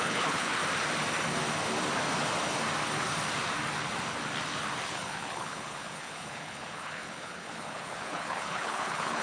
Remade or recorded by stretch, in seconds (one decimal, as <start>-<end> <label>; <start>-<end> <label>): 0.0-0.6 remade; 0.6-4.9 recorded; 4.9-9.2 remade